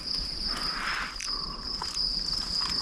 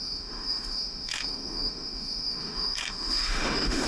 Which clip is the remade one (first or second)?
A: second